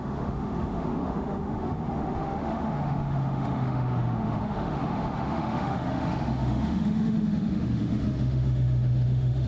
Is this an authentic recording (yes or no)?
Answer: no